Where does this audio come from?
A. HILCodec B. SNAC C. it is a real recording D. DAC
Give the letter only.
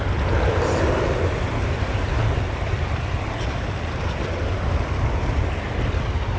C